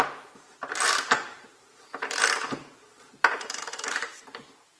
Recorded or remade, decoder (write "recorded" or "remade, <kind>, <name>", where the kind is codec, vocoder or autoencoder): remade, vocoder, BigVGAN v2